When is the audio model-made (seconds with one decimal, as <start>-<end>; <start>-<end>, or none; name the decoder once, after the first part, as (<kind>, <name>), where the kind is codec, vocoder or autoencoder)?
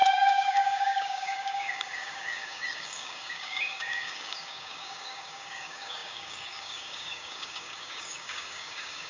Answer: 0.0-9.1 (codec, DAC)